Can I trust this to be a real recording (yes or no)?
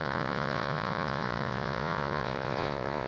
no